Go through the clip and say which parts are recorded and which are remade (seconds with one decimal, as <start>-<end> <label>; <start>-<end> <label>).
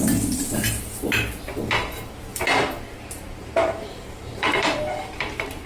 0.0-2.3 recorded; 2.3-5.7 remade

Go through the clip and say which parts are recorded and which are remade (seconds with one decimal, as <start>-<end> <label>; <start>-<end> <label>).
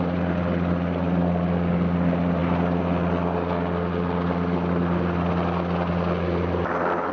0.0-7.1 recorded